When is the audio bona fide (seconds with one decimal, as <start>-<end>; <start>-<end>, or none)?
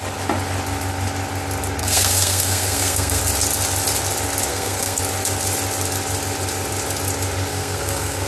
0.0-1.8; 3.2-4.5; 5.0-7.5